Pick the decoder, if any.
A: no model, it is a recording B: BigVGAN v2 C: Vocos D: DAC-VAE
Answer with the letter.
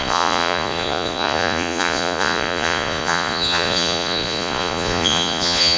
C